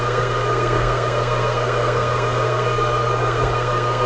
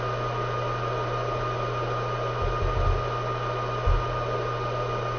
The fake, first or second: first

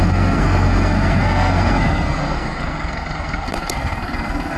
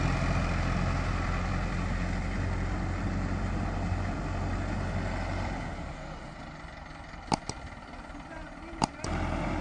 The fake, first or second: first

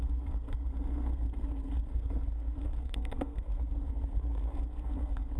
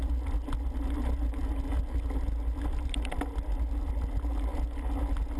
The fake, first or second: first